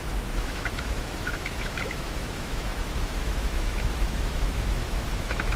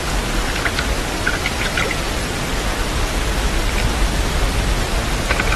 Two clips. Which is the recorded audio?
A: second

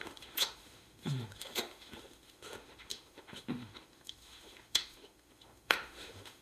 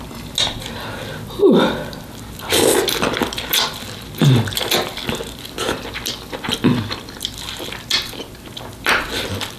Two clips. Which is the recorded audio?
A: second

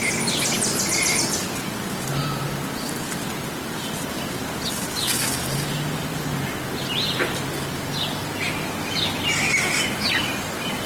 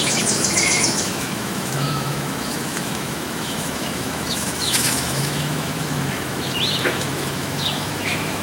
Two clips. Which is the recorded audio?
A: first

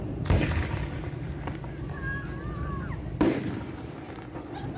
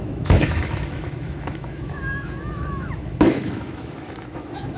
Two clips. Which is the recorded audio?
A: first